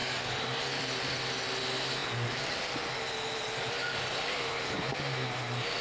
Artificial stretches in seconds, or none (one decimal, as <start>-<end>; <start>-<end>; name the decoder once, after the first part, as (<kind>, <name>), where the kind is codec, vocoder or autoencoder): 0.0-0.6 (codec, DAC)